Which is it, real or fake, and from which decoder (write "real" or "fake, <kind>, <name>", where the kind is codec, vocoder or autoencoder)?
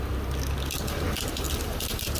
real